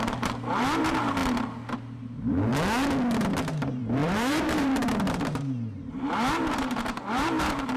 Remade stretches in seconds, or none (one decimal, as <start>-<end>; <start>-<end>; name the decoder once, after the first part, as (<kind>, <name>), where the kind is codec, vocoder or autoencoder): 0.0-1.2 (vocoder, BigVGAN v2); 1.7-2.5; 3.2-7.8